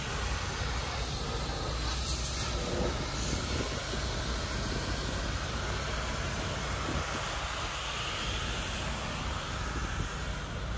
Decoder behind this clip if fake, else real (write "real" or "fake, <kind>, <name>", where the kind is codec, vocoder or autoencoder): real